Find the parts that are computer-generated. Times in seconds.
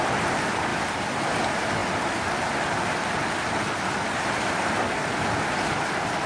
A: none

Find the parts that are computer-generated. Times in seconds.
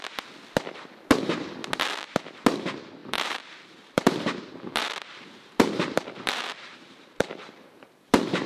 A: 3.0-7.9 (vocoder, BigVGAN v2)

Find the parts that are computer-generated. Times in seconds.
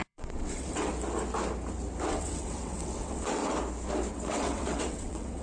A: 0.0-0.9 (vocoder, WaveNeXt); 2.1-3.4; 4.1-5.4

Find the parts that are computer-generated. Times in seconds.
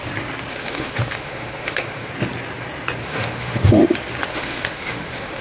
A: 0.5-2.1 (autoencoder, DAC-VAE); 3.0-3.8; 4.3-5.4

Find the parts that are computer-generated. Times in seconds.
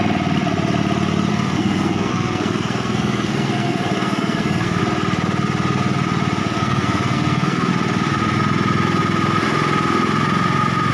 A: 1.3-4.8 (codec, SNAC); 6.4-7.7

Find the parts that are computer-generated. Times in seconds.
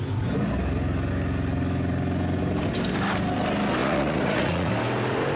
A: 3.8-4.7 (vocoder, Vocos)